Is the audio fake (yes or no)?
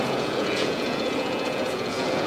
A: yes